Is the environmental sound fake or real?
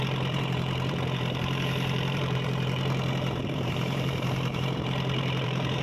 fake